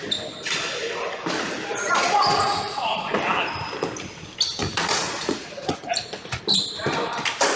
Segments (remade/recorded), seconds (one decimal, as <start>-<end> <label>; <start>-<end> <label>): 0.0-1.7 recorded; 1.7-3.2 remade; 3.2-4.6 recorded; 4.6-6.4 remade; 6.4-7.6 recorded

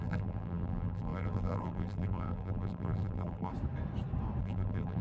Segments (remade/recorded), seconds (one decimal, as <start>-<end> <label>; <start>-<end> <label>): 0.0-3.5 remade; 3.5-4.4 recorded; 4.4-5.0 remade

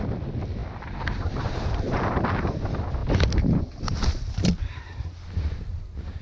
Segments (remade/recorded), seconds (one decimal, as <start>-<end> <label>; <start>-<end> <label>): 0.0-6.2 recorded

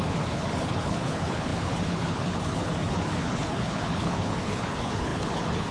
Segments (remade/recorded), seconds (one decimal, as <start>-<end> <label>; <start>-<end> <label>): 0.0-5.7 remade

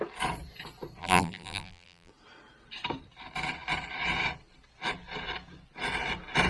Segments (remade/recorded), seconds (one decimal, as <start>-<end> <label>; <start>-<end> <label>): 0.0-1.0 recorded; 1.0-2.1 remade; 2.1-6.5 recorded

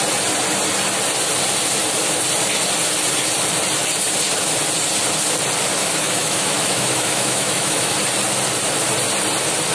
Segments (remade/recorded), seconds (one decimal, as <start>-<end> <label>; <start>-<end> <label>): 0.0-5.8 recorded; 5.8-7.9 remade; 7.9-9.7 recorded

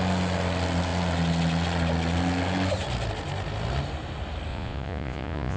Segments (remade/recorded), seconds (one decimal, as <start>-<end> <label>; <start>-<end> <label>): 0.0-4.5 recorded; 4.5-5.6 remade